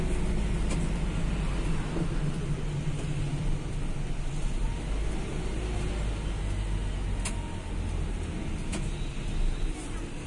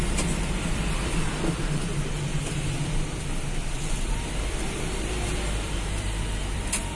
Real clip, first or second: first